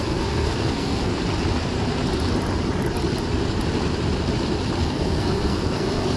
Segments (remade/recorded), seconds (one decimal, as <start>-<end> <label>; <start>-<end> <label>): 0.0-1.1 remade; 1.1-4.8 recorded; 4.8-6.2 remade